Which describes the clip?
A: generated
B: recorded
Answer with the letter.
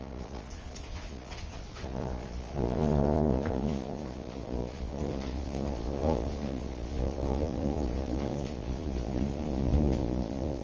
A